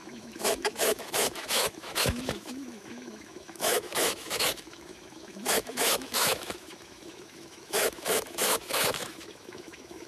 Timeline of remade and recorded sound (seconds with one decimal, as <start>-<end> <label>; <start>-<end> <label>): 0.0-10.1 remade